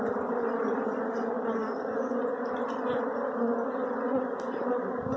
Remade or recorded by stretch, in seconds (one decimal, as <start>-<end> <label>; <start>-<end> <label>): 0.0-1.6 remade; 1.6-4.7 recorded; 4.7-5.2 remade